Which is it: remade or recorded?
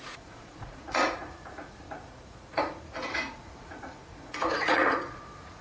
remade